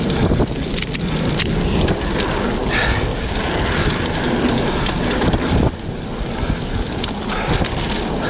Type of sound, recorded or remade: recorded